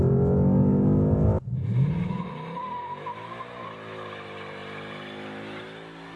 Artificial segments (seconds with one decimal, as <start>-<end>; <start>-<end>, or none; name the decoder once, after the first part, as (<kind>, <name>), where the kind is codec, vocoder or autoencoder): none